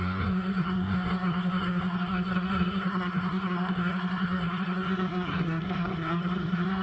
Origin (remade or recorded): remade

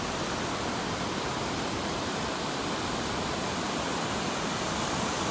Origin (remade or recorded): recorded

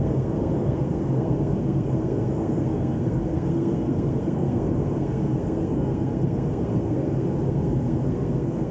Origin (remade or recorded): remade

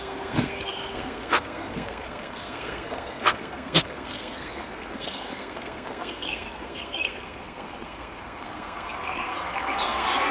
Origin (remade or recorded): remade